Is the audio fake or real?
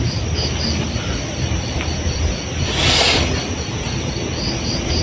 real